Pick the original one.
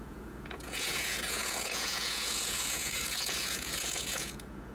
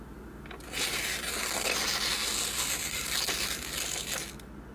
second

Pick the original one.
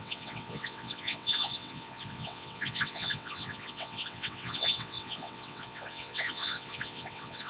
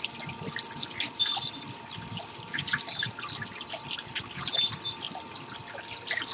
second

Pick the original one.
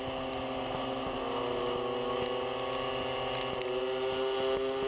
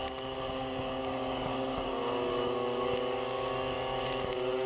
first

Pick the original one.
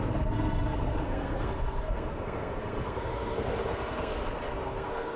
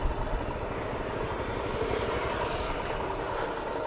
second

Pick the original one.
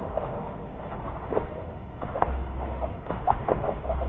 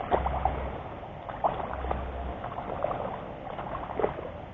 second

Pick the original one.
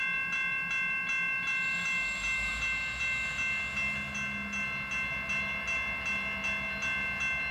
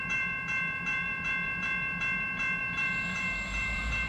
first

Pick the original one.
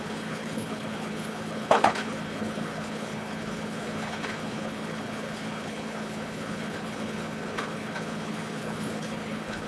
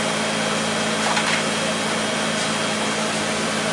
second